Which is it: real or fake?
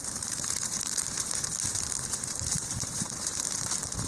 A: fake